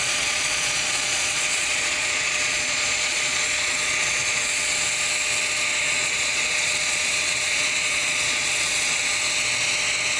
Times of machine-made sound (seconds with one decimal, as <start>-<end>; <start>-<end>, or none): 0.0-4.7; 5.8-9.0

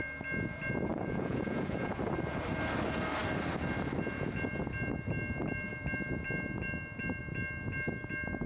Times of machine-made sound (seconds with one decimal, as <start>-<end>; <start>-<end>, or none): 0.9-2.0